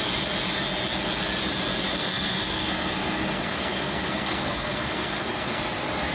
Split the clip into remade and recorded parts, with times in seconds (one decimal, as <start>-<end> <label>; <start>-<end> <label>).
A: 0.0-1.9 recorded; 1.9-5.6 remade; 5.6-6.1 recorded